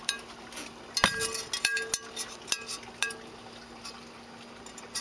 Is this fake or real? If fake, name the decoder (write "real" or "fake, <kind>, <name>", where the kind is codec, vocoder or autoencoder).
real